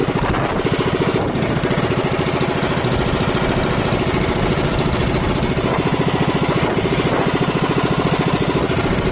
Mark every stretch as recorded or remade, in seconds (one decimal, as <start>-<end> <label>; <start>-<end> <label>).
0.0-9.1 recorded